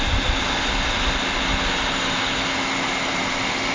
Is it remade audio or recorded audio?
recorded